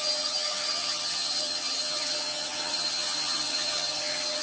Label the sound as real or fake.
fake